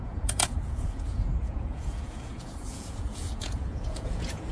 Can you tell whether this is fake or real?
fake